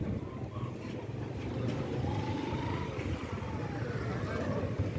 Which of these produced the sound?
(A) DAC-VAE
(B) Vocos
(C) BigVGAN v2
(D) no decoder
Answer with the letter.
D